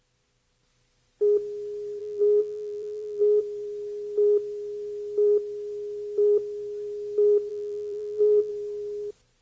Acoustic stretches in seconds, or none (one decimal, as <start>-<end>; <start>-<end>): 0.0-2.0; 3.4-7.5; 8.5-9.4